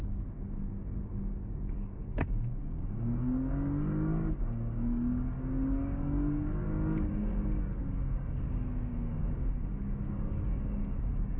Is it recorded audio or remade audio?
remade